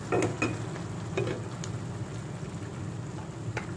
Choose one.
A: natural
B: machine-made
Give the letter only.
A